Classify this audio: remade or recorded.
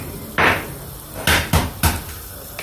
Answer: recorded